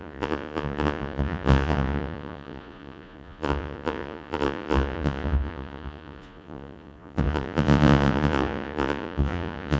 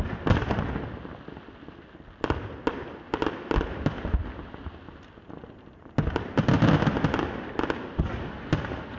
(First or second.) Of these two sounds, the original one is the second